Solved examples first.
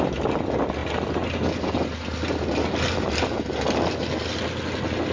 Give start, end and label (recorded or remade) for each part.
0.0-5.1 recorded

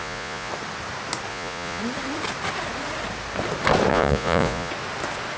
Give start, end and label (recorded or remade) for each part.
0.0-0.5 remade; 0.5-1.3 recorded; 1.3-1.8 remade; 1.8-3.9 recorded; 3.9-4.7 remade; 4.7-5.4 recorded

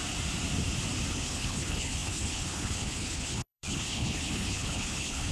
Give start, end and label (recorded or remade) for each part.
0.0-1.1 recorded; 1.1-5.3 remade

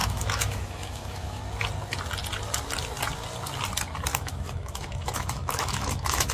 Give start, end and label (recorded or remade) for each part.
0.0-1.4 remade; 1.4-4.1 recorded; 4.1-6.3 remade

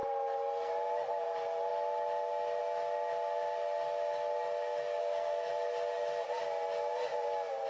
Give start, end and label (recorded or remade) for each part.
0.0-0.7 remade; 0.7-5.0 recorded; 5.0-5.5 remade; 5.5-7.7 recorded

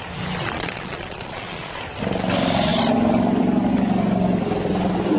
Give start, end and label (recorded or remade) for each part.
0.0-0.4 recorded; 0.4-1.8 remade; 1.8-5.2 recorded